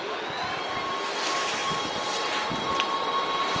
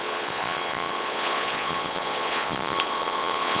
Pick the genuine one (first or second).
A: first